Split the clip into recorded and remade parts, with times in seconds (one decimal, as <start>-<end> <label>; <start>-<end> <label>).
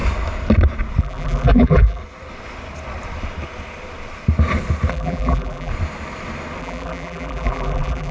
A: 0.0-1.0 recorded; 1.0-2.0 remade; 2.0-4.9 recorded; 4.9-5.7 remade; 5.7-6.6 recorded; 6.6-8.1 remade